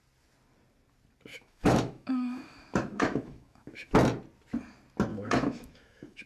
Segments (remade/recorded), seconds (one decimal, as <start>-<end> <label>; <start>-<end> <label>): 0.0-1.3 recorded; 1.3-3.9 remade; 3.9-5.1 recorded; 5.1-6.3 remade